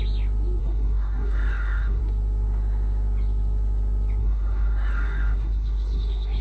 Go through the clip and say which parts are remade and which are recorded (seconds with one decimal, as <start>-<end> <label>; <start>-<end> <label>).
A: 0.0-0.6 recorded; 0.6-2.0 remade; 2.0-4.2 recorded; 4.2-6.4 remade

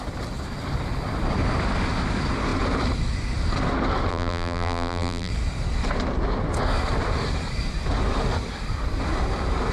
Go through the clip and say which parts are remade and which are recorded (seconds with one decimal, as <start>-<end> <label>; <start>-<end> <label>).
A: 0.0-4.1 recorded; 4.1-5.3 remade; 5.3-9.7 recorded

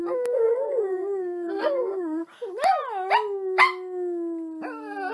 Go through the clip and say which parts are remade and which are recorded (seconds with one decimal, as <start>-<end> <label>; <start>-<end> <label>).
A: 0.0-2.2 remade; 2.2-5.1 recorded

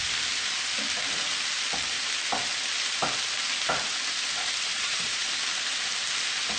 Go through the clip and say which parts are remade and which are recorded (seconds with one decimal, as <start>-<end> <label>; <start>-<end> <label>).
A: 0.0-4.7 recorded; 4.7-5.3 remade; 5.3-6.6 recorded

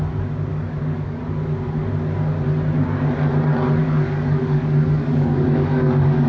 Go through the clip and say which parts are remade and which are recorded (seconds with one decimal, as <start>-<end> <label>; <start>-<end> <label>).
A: 0.0-0.5 recorded; 0.5-1.2 remade; 1.2-3.8 recorded; 3.8-6.3 remade